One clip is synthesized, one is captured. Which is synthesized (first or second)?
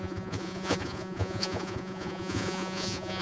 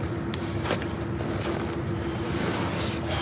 first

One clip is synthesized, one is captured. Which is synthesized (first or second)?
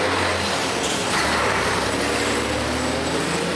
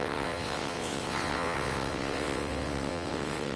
second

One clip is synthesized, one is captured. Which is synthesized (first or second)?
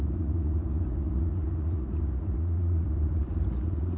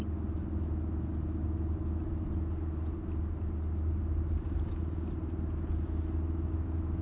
first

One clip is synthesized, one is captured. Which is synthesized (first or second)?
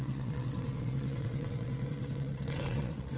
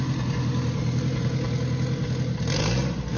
first